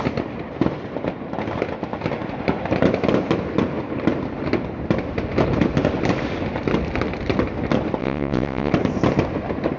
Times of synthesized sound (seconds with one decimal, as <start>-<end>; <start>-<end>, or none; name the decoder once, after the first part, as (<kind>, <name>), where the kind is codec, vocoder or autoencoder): 8.0-8.7 (vocoder, WaveNeXt)